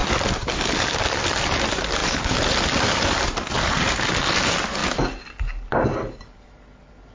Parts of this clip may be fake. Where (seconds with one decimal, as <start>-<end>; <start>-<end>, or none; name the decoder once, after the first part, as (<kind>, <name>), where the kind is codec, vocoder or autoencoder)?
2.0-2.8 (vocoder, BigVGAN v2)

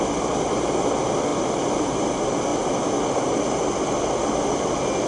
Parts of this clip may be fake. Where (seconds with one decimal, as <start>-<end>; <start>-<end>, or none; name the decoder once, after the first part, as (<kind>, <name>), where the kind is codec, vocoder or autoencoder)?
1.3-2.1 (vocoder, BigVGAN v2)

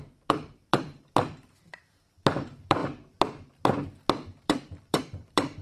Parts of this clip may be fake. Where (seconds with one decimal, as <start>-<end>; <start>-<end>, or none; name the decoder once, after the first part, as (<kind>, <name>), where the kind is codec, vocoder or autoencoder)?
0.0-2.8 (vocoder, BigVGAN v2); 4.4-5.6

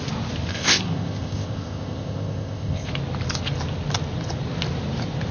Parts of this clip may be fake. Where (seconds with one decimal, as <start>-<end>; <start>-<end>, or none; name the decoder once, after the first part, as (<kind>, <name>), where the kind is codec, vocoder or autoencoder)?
0.5-2.9 (codec, ZipCodec)

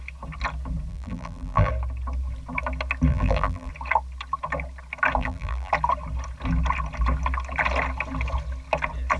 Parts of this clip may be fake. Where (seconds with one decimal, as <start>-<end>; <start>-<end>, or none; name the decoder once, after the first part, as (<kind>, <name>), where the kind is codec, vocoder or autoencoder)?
0.9-1.7 (vocoder, BigVGAN v2); 3.1-3.7; 5.2-5.7

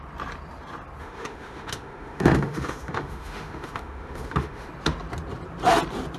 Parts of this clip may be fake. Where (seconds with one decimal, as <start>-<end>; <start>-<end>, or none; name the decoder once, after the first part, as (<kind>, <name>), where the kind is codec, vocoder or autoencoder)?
1.0-4.7 (autoencoder, DAC-VAE)

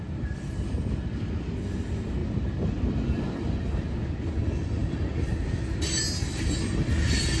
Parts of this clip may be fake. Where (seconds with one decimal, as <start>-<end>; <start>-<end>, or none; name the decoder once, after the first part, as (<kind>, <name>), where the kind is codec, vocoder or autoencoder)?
none

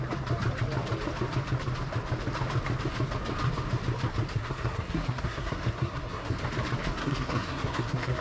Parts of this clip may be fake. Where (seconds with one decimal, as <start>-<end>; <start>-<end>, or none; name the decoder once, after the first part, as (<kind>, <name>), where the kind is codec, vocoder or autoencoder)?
4.3-6.4 (codec, SNAC); 7.0-8.2